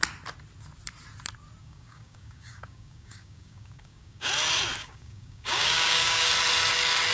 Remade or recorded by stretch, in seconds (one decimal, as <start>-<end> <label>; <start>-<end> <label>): 0.0-1.6 recorded; 1.6-4.3 remade; 4.3-4.8 recorded; 4.8-6.3 remade; 6.3-7.1 recorded